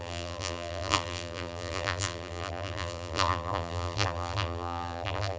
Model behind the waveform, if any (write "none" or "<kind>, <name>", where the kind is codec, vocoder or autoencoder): vocoder, BigVGAN v2